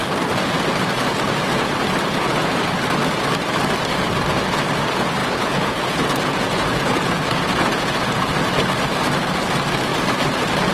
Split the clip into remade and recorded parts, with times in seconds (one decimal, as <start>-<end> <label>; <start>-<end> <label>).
0.0-5.2 recorded; 5.2-8.3 remade; 8.3-10.7 recorded